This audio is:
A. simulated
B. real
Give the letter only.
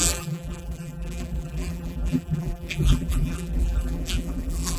A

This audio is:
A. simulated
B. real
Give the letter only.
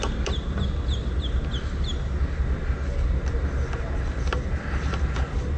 B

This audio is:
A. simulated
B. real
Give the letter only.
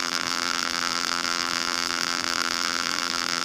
A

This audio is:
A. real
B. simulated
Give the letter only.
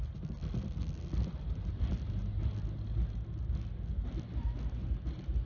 A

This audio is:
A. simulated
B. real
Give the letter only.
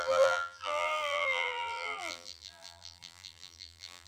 A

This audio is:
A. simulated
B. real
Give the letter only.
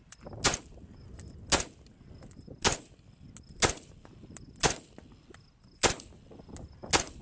B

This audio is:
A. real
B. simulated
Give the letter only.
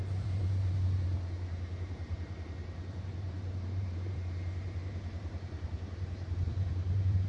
B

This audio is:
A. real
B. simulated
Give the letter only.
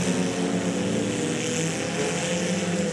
A